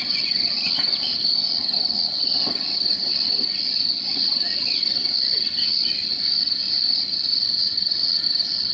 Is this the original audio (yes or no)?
yes